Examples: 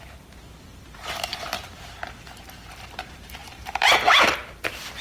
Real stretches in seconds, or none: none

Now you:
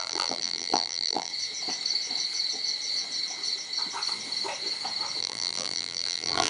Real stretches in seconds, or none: 1.3-5.2

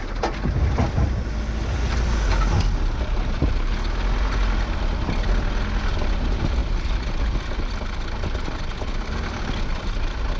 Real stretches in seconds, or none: 0.0-6.6; 7.4-10.4

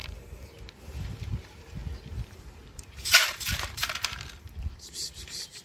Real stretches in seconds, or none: 0.0-0.8; 1.8-2.4

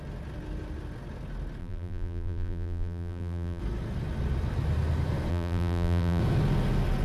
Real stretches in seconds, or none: 0.0-1.6; 3.6-5.3; 6.2-7.0

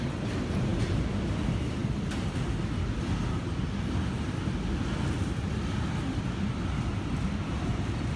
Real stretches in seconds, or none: 0.0-8.2

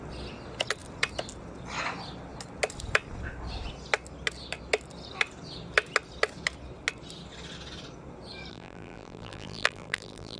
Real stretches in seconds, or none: 0.0-8.5

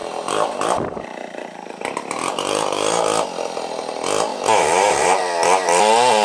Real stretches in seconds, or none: 3.0-4.3; 5.2-6.2